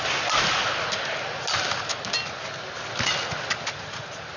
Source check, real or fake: real